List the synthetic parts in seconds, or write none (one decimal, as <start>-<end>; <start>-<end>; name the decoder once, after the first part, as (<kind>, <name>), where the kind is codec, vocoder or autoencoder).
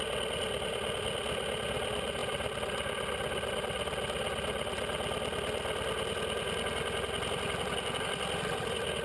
none